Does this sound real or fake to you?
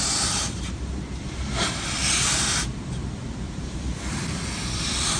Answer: fake